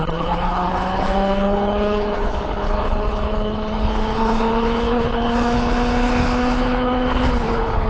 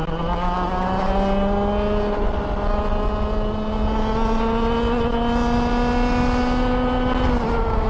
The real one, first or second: second